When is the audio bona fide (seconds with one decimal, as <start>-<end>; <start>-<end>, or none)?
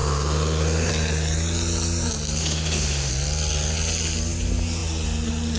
0.9-2.4; 3.1-5.6